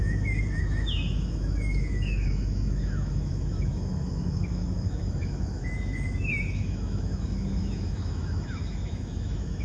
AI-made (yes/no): yes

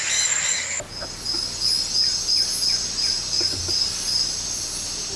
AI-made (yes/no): no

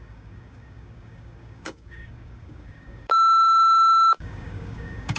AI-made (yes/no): yes